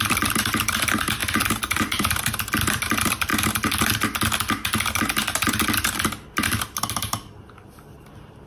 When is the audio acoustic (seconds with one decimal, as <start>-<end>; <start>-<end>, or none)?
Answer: 3.3-5.5